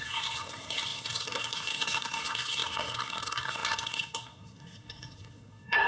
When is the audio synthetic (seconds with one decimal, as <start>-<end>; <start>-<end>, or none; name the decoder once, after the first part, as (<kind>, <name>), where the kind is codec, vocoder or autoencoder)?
0.0-5.9 (codec, SNAC)